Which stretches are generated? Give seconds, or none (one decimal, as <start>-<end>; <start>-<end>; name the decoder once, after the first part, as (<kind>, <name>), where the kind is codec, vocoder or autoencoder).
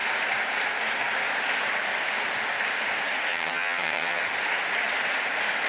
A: 3.3-4.2 (vocoder, HiFi-GAN)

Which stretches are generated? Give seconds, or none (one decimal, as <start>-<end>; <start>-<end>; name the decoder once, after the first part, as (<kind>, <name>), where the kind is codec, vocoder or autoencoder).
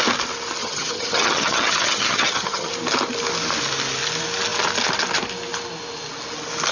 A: 0.6-2.7 (vocoder, HiFi-GAN)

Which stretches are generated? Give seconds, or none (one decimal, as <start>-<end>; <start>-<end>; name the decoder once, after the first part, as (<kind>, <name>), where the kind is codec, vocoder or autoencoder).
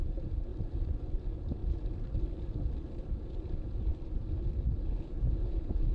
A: 0.0-0.5 (vocoder, Vocos); 1.1-1.6; 3.1-3.9; 5.0-5.9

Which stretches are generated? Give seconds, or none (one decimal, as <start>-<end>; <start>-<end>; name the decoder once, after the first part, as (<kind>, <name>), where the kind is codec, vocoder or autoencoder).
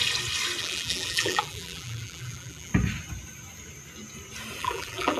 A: 0.6-2.7 (vocoder, BigVGAN v2); 4.6-5.2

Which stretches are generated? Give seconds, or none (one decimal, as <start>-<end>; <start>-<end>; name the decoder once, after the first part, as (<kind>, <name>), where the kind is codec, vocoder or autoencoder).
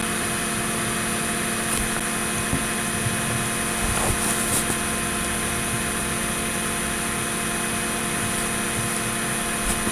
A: none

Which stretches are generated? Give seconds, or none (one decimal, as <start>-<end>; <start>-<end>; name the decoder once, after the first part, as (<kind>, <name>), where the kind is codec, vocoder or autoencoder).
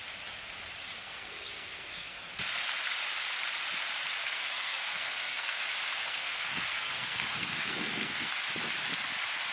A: 0.8-2.3 (codec, SNAC); 4.2-5.6; 6.0-8.3